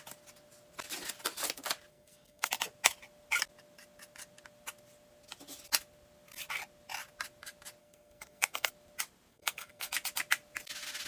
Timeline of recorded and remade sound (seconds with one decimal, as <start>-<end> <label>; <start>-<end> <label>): 0.0-1.9 recorded; 1.9-2.5 remade; 2.5-7.8 recorded; 7.8-8.7 remade; 8.7-9.3 recorded; 9.3-9.9 remade; 9.9-11.1 recorded